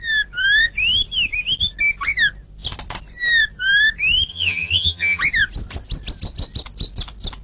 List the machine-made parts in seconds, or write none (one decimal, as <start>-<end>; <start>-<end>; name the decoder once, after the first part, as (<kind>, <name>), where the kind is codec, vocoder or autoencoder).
4.3-5.2 (vocoder, HiFi-GAN)